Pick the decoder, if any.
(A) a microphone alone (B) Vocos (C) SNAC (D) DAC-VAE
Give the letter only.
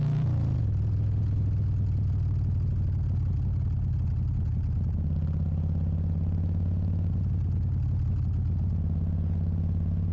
A